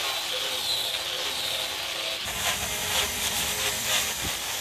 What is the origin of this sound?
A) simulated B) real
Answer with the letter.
B